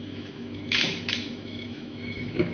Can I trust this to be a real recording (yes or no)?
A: no